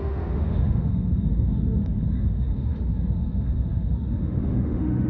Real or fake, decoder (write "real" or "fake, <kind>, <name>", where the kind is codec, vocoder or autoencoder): fake, autoencoder, DAC-VAE